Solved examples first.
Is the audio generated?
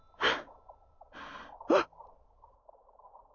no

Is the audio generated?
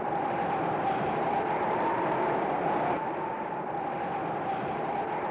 yes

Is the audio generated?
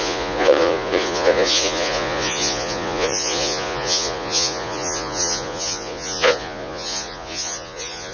yes